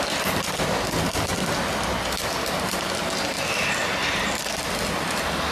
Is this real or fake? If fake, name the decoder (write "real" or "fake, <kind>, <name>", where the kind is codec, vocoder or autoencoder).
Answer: real